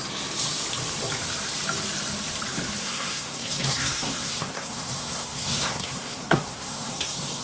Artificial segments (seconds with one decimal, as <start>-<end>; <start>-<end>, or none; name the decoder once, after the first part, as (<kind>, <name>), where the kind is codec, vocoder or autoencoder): 2.8-7.4 (codec, SNAC)